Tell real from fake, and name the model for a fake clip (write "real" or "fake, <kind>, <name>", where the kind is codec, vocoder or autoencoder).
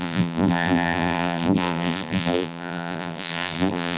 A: fake, vocoder, BigVGAN v2